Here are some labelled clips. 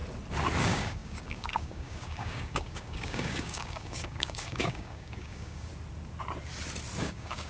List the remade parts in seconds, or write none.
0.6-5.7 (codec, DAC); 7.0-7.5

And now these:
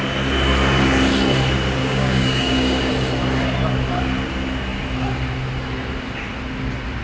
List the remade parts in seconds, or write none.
1.8-2.9 (codec, DAC)

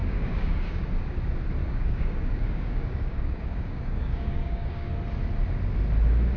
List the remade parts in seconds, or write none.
0.0-0.8 (codec, DAC); 1.6-4.9

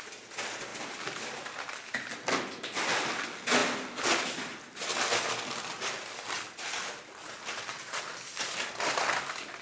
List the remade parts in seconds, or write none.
none

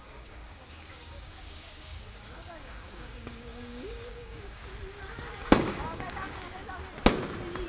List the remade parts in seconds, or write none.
0.0-4.6 (codec, DAC); 5.4-6.6

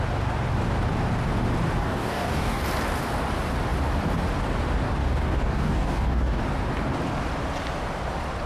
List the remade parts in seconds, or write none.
1.8-2.6 (codec, DAC); 5.0-6.4

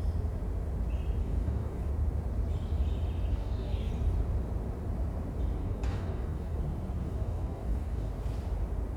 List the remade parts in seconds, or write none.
1.2-1.9 (codec, DAC); 3.3-3.9; 5.6-6.6; 7.0-8.1